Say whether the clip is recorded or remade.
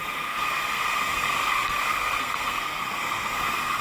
remade